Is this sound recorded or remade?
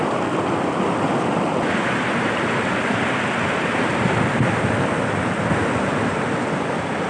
recorded